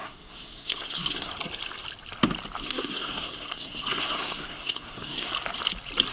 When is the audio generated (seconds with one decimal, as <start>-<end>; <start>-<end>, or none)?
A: 0.0-1.3; 2.6-5.3